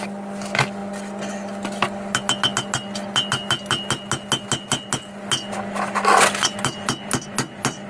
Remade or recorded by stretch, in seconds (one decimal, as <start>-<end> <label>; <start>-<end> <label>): 0.0-7.9 recorded

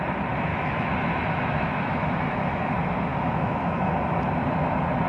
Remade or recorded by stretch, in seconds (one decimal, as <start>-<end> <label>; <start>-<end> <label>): 0.0-0.5 recorded; 0.5-2.7 remade; 2.7-3.1 recorded; 3.1-3.9 remade; 3.9-5.1 recorded

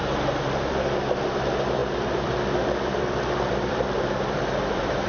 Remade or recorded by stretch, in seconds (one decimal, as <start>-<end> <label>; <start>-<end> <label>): 0.0-1.8 recorded; 1.8-5.1 remade

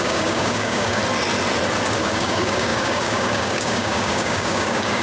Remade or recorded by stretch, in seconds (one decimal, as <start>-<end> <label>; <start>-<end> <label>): 0.0-1.0 remade; 1.0-2.0 recorded; 2.0-5.0 remade

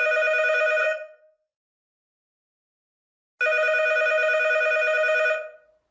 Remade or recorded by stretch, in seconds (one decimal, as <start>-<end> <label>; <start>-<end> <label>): 0.0-0.8 recorded; 0.8-2.7 remade; 2.7-5.9 recorded

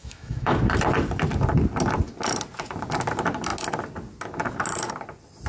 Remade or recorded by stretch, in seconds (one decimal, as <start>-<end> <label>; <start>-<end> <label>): 0.0-0.6 remade; 0.6-5.5 recorded

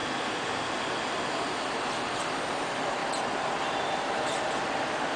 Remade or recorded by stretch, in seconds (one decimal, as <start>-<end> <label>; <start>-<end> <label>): 0.0-3.0 recorded; 3.0-5.2 remade